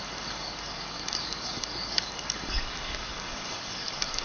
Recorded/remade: remade